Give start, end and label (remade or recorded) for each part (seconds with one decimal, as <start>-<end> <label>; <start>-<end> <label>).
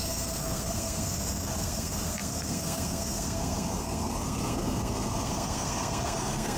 0.0-6.6 remade